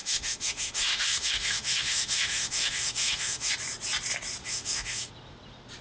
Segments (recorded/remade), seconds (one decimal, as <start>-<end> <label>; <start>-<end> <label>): 0.0-3.5 remade; 3.5-4.4 recorded; 4.4-5.1 remade; 5.1-5.8 recorded